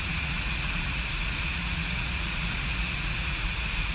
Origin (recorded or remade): remade